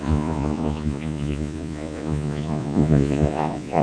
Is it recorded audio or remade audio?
remade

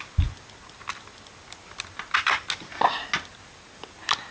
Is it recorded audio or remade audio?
recorded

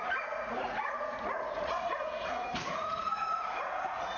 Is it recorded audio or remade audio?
remade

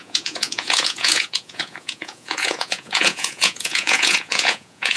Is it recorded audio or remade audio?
remade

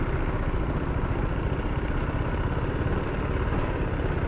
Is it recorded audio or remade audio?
recorded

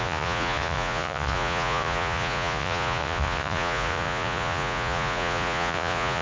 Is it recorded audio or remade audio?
remade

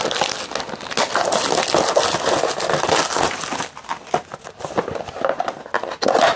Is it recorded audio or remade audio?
recorded